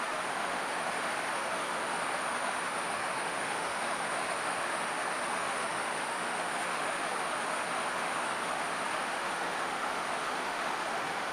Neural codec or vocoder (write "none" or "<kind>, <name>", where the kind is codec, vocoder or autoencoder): autoencoder, DAC-VAE